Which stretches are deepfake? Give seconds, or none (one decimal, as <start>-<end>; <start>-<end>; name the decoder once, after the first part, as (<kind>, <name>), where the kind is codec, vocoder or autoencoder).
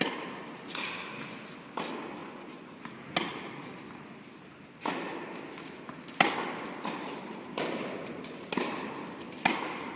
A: 2.2-2.8 (vocoder, Vocos); 8.0-8.5